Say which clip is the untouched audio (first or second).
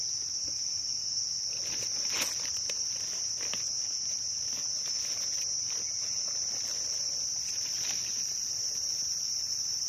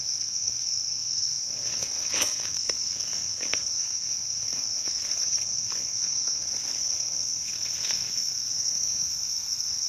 first